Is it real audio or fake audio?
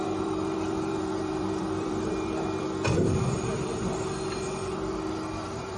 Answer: fake